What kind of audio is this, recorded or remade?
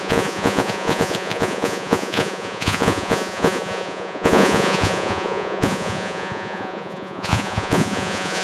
remade